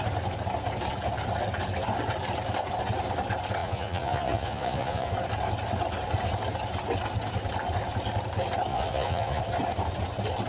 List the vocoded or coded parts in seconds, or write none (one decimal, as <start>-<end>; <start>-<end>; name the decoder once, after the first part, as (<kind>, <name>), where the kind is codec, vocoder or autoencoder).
3.6-5.1 (vocoder, Vocos); 8.7-9.4